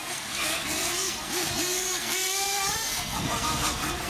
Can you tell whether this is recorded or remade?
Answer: remade